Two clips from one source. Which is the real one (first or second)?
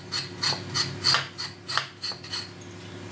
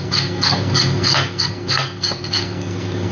first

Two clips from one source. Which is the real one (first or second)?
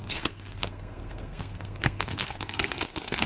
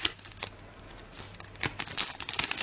second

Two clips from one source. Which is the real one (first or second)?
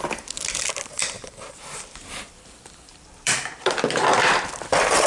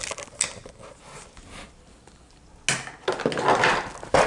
second